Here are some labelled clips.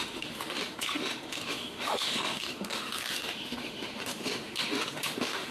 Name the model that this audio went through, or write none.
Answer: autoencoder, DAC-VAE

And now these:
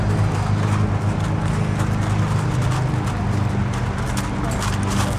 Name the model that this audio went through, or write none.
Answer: none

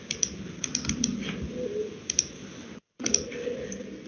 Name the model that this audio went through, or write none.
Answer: none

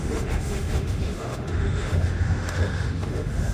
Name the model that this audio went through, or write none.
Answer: autoencoder, DAC-VAE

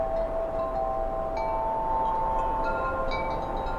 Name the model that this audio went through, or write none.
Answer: none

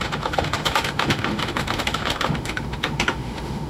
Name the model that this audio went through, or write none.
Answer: autoencoder, DAC-VAE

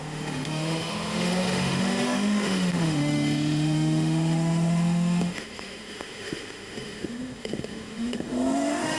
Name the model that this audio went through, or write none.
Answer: autoencoder, DAC-VAE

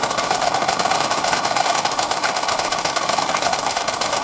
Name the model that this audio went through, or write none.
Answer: autoencoder, DAC-VAE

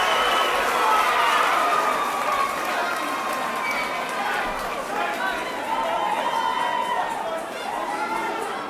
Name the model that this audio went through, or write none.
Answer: none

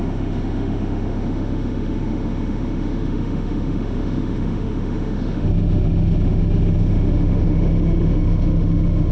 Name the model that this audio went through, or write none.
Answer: autoencoder, DAC-VAE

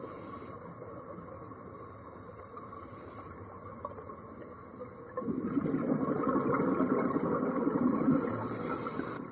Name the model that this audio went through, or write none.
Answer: none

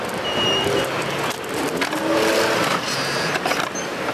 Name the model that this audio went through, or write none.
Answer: none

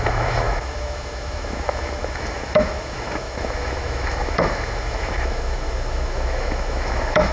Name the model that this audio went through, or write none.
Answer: autoencoder, DAC-VAE